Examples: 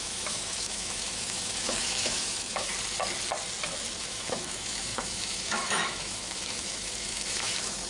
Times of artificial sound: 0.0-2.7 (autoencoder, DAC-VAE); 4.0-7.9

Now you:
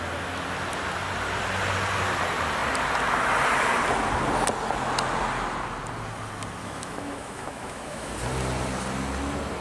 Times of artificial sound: 6.6-8.1 (autoencoder, DAC-VAE)

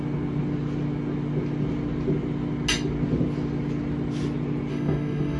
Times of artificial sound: 4.7-5.4 (autoencoder, DAC-VAE)

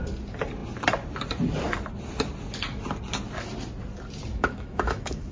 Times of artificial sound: 4.3-5.3 (autoencoder, DAC-VAE)

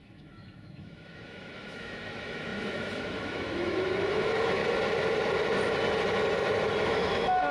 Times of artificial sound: 0.0-4.6 (autoencoder, DAC-VAE); 6.8-7.5

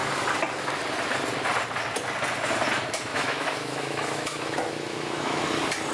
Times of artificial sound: 3.1-5.4 (autoencoder, DAC-VAE)